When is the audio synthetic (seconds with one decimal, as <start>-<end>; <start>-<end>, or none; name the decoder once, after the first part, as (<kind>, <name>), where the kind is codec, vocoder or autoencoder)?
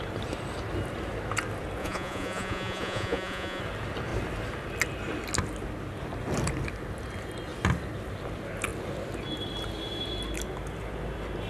1.8-3.6 (vocoder, Vocos)